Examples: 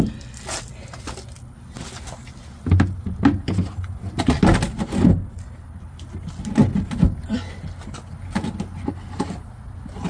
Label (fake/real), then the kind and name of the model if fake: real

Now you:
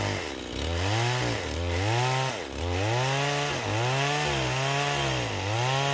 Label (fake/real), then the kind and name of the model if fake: real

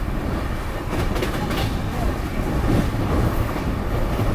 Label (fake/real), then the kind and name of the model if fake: real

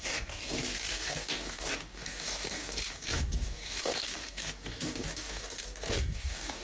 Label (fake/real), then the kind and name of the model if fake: fake, codec, DAC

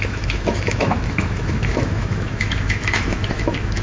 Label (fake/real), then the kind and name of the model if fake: fake, autoencoder, DAC-VAE